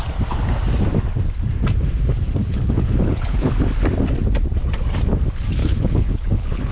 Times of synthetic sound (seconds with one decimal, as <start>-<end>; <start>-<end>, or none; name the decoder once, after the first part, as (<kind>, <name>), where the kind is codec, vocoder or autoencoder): 2.4-3.5 (codec, HILCodec); 5.6-6.7